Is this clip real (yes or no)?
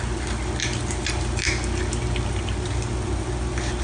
yes